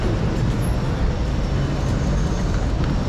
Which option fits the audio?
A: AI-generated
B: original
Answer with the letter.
B